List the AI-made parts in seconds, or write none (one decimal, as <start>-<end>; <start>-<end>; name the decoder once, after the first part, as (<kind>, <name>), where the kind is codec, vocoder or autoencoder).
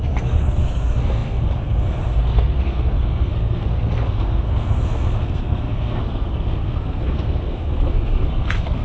0.0-8.8 (codec, SNAC)